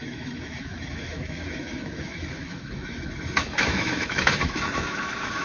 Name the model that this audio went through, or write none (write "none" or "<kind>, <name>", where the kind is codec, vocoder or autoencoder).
autoencoder, DAC-VAE